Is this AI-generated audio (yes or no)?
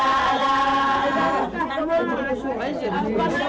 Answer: no